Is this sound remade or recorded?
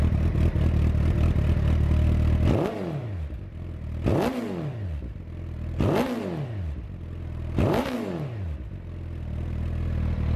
recorded